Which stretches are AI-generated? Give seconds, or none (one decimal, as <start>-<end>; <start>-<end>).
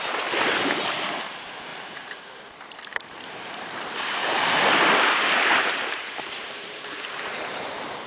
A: 1.7-2.4; 2.9-4.5; 5.5-7.5